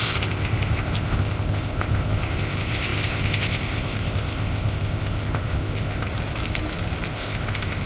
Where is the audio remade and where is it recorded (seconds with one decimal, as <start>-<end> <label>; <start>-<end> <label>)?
0.0-6.1 remade; 6.1-7.1 recorded; 7.1-7.9 remade